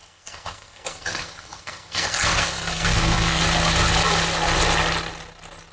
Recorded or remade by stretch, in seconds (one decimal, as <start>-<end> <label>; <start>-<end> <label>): 0.0-3.4 remade; 3.4-5.7 recorded